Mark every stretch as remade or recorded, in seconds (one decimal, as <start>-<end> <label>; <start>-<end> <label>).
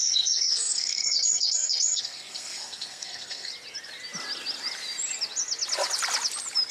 0.0-3.5 remade; 3.5-6.7 recorded